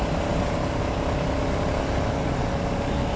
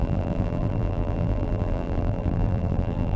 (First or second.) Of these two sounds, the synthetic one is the second